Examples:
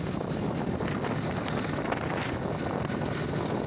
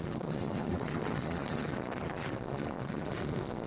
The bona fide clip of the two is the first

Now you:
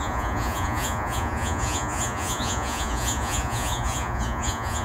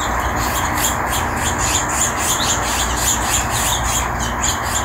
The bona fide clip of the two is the second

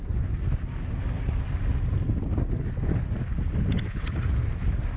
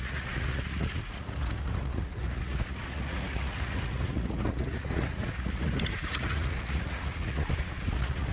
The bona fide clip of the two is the first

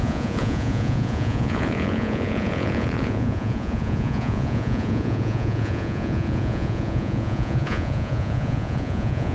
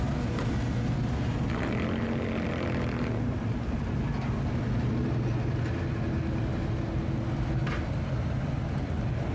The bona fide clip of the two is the second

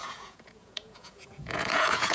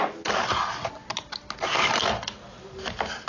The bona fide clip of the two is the second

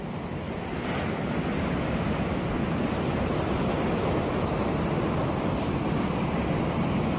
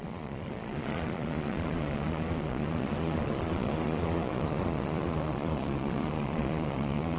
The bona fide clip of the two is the first